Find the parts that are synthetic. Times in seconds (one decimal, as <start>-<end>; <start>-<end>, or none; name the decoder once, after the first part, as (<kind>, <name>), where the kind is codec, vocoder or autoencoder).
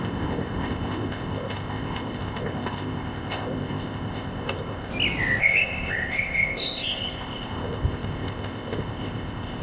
0.0-4.9 (codec, ZipCodec); 5.4-9.6